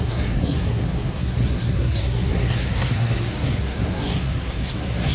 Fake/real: fake